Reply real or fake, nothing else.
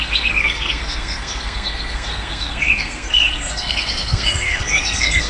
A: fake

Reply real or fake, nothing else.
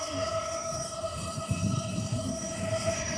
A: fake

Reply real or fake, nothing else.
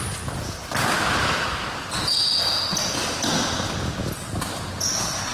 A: real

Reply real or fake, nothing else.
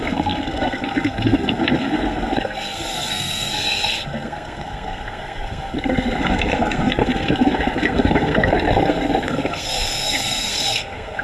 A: fake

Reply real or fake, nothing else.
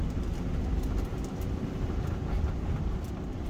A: real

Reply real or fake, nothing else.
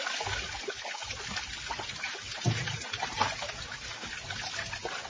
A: real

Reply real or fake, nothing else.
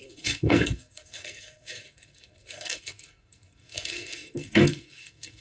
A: fake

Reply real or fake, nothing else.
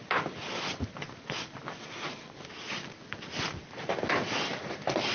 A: real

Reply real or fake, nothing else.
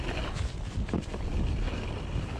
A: real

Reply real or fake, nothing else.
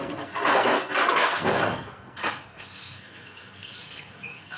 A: fake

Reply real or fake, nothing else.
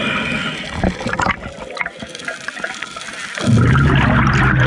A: real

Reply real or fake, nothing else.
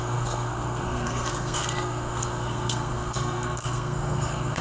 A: fake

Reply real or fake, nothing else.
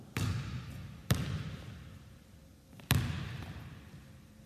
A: real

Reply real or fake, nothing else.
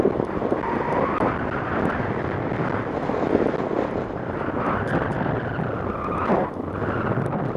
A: real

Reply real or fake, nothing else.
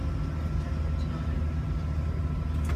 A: real